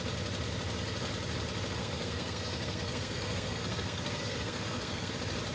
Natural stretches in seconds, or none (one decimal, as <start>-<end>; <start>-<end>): 0.0-1.8; 5.1-5.5